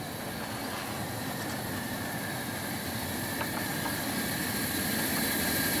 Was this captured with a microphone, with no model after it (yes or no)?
yes